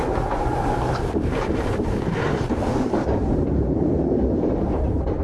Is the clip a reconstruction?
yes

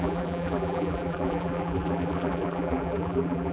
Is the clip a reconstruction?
yes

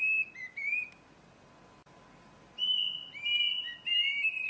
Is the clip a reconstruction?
no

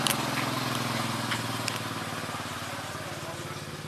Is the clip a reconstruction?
no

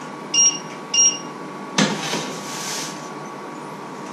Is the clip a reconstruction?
no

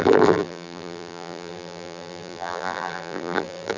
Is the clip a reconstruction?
yes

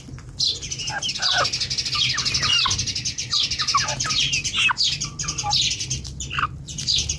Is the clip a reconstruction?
no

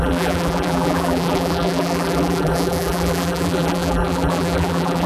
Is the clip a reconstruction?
yes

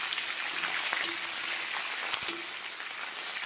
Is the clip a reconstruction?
no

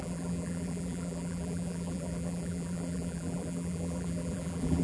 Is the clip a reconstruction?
yes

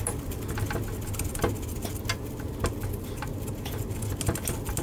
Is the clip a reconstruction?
no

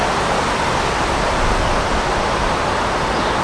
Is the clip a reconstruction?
no